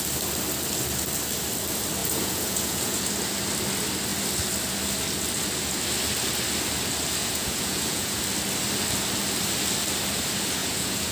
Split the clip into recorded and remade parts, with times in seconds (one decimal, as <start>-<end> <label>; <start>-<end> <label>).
0.0-2.0 recorded; 2.0-3.1 remade; 3.1-7.2 recorded; 7.2-8.2 remade; 8.2-10.6 recorded; 10.6-11.1 remade